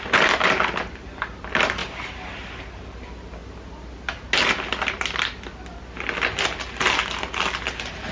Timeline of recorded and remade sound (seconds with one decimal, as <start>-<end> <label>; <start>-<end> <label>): 0.0-1.8 recorded; 1.8-2.5 remade; 2.5-8.1 recorded